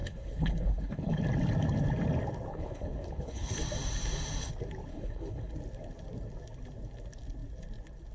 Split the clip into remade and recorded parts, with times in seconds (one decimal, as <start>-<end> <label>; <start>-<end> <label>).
0.0-1.2 remade; 1.2-2.5 recorded; 2.5-3.5 remade; 3.5-4.9 recorded; 4.9-5.5 remade; 5.5-8.1 recorded